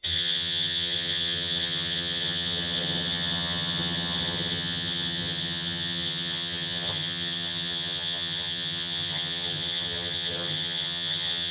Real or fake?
fake